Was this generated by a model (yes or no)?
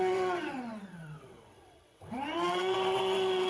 yes